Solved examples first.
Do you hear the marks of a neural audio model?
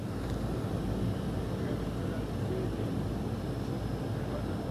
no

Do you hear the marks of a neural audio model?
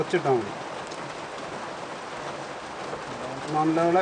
no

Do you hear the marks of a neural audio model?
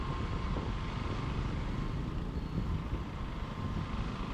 no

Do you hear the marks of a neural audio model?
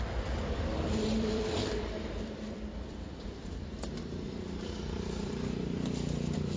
yes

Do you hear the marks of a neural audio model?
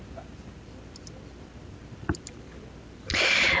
no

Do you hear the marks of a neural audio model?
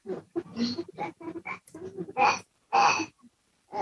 yes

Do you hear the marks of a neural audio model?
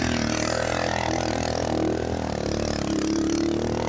no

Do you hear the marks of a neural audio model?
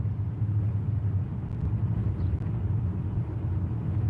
no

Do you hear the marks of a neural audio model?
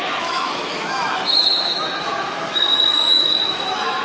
yes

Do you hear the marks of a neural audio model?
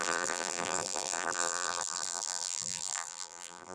yes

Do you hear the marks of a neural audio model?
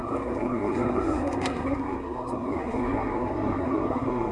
yes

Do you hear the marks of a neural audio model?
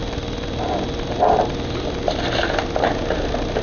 no